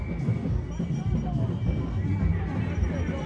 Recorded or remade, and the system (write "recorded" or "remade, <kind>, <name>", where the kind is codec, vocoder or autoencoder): recorded